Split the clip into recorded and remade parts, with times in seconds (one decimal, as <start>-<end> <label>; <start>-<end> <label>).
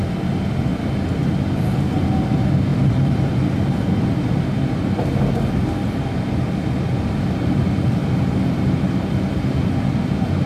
0.0-2.7 recorded; 2.7-3.3 remade; 3.3-10.5 recorded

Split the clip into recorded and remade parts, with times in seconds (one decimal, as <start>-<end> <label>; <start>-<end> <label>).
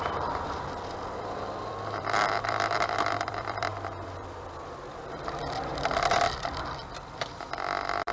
0.0-8.1 remade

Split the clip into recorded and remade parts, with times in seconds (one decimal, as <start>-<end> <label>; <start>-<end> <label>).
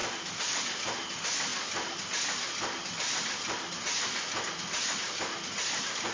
0.0-0.7 remade; 0.7-6.1 recorded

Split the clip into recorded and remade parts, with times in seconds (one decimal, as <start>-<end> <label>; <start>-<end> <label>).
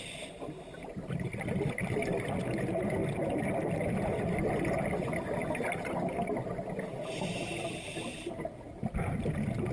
0.0-9.7 recorded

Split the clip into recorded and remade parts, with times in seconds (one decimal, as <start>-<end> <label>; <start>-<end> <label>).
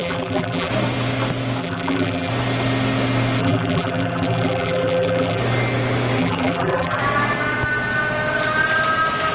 0.0-0.7 remade; 0.7-1.6 recorded; 1.6-2.3 remade; 2.3-3.4 recorded; 3.4-5.4 remade; 5.4-6.2 recorded; 6.2-7.0 remade; 7.0-9.3 recorded